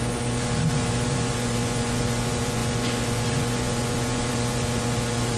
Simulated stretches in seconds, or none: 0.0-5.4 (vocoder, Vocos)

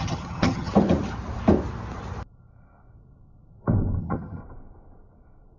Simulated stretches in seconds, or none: 0.0-0.7 (vocoder, HiFi-GAN); 4.0-4.4

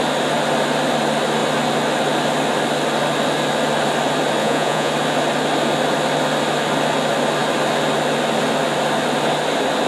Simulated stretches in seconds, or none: 4.4-4.9 (vocoder, Vocos)